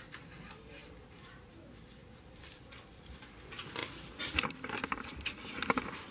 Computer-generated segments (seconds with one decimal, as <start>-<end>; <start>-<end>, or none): 0.0-6.1